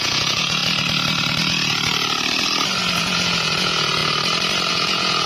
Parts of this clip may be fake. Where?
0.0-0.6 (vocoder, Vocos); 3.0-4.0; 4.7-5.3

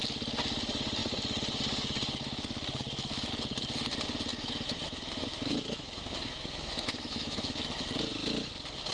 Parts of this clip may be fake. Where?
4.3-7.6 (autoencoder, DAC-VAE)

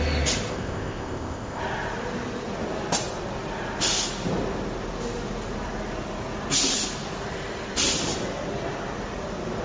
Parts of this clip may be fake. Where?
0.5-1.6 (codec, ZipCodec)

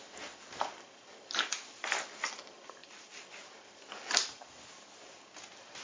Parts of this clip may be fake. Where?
2.8-3.5 (vocoder, BigVGAN v2)

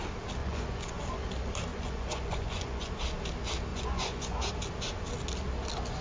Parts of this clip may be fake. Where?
0.4-1.0 (vocoder, Vocos); 1.7-2.9; 3.7-4.5